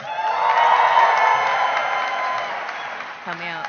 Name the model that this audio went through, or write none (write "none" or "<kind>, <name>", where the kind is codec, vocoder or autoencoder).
none